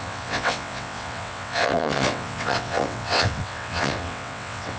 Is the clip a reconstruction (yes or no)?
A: yes